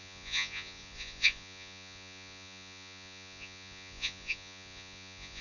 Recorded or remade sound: remade